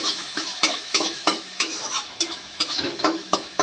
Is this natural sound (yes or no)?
no